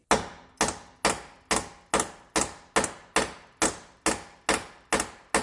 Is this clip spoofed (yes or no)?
no